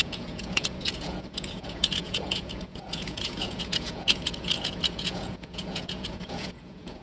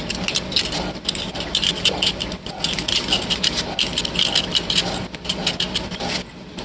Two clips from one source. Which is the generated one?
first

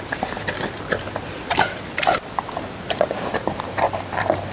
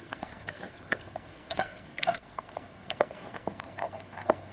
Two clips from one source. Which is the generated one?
second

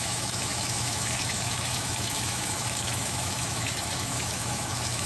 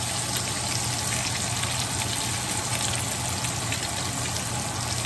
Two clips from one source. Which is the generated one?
first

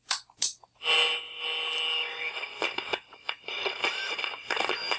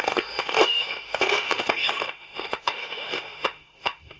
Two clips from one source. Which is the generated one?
second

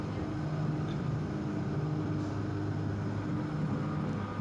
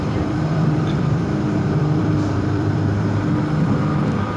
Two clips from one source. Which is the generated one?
second